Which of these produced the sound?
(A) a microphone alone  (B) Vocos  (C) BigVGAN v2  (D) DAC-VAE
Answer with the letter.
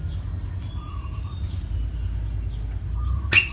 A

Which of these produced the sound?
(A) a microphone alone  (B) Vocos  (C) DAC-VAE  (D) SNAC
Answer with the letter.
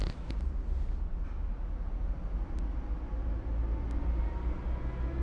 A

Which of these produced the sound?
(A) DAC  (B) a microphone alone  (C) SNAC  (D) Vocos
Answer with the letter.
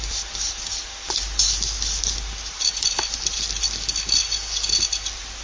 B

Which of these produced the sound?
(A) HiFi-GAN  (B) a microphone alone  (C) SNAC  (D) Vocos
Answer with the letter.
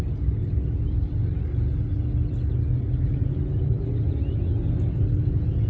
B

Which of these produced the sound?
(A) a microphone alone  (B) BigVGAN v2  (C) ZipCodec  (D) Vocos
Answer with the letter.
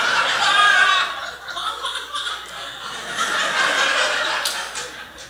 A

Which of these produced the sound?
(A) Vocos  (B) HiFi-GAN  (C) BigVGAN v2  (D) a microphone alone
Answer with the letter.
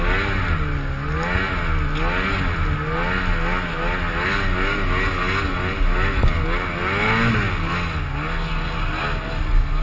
D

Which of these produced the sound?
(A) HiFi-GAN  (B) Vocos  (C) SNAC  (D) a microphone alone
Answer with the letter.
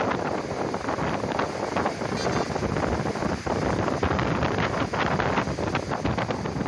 D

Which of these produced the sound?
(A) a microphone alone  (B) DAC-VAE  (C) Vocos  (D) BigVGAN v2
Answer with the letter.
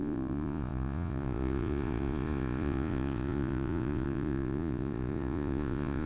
C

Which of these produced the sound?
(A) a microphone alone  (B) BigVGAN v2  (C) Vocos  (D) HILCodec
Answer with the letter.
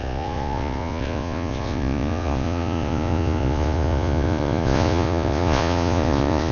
C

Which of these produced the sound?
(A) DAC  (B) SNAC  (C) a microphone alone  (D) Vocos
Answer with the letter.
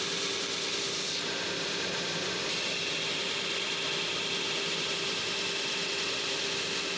C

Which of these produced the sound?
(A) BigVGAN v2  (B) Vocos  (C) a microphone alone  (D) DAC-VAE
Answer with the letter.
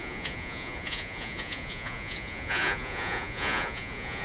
B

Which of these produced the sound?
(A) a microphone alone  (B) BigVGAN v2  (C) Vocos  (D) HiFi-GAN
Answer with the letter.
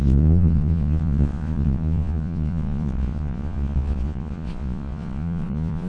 C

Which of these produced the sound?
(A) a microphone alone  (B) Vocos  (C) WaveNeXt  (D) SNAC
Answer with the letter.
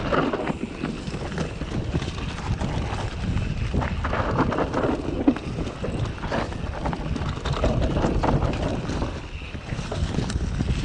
A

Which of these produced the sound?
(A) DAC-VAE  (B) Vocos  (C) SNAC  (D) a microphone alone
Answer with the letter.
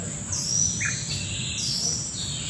D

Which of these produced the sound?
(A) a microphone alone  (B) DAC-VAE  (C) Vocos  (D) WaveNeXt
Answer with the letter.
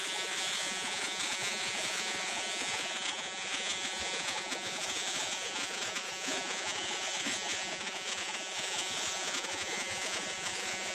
C